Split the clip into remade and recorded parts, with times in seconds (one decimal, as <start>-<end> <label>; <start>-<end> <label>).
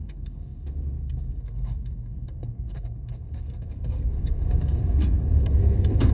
0.0-6.1 remade